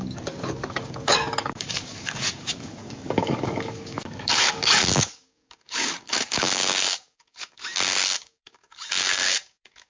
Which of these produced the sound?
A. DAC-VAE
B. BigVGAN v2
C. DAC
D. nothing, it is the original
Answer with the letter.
C